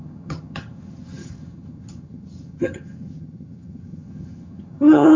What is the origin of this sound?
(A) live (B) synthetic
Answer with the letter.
B